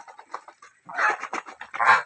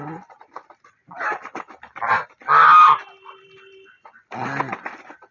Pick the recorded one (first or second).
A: first